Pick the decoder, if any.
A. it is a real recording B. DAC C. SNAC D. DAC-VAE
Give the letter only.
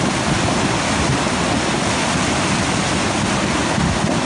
A